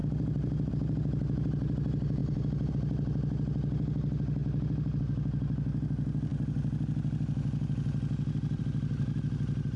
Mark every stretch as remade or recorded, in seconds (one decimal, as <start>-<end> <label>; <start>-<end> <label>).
0.0-2.2 recorded; 2.2-2.7 remade; 2.7-9.8 recorded